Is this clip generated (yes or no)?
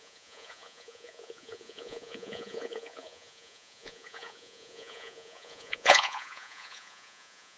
yes